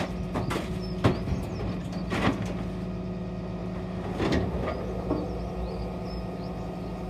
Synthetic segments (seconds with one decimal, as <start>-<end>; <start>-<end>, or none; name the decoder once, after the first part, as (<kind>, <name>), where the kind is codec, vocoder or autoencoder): none